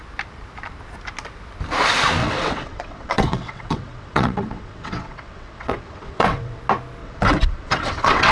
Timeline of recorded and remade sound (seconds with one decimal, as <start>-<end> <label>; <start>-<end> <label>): 0.0-2.2 recorded; 2.2-6.6 remade; 6.6-7.0 recorded; 7.0-8.3 remade